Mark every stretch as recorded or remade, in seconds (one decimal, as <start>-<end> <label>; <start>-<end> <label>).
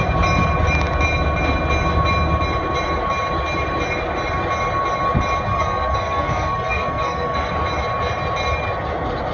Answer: 0.0-5.5 recorded; 5.5-7.5 remade; 7.5-9.3 recorded